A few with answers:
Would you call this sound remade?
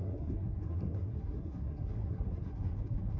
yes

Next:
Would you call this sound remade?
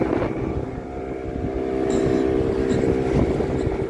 no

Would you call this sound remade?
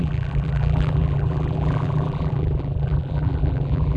yes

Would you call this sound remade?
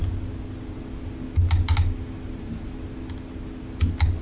no